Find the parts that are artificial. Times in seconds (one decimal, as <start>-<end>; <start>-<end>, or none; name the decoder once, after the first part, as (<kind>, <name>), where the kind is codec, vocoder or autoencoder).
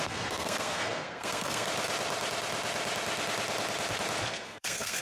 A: 0.0-1.7 (codec, SNAC); 4.3-5.0